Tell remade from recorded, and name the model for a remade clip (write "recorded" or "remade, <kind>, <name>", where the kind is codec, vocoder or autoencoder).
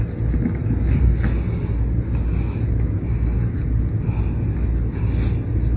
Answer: recorded